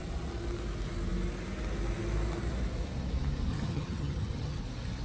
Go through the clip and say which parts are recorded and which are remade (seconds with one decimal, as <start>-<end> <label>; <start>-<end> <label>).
0.0-3.5 recorded; 3.5-4.6 remade; 4.6-5.0 recorded